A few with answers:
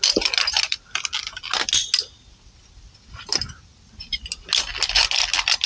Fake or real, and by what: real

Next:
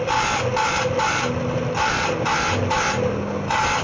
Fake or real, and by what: real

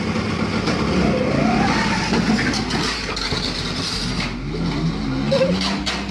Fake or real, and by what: real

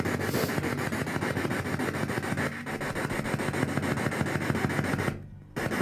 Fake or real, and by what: real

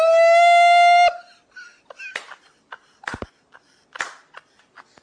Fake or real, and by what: real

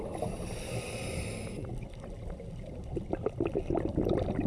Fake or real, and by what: real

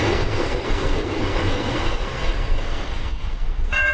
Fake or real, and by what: fake, codec, SNAC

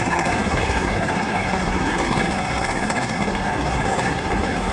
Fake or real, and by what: fake, codec, SNAC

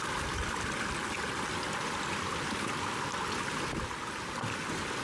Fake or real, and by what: real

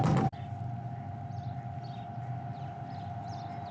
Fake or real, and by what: real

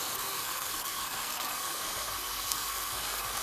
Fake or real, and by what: fake, codec, SNAC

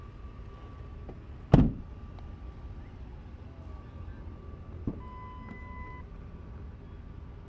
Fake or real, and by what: real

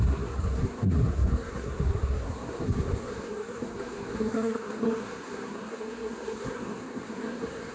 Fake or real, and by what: fake, codec, SNAC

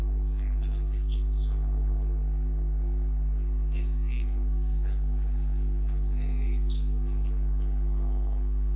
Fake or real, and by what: fake, codec, SNAC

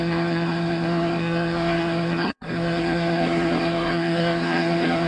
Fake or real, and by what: fake, codec, SNAC